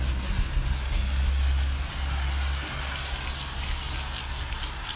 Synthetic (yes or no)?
no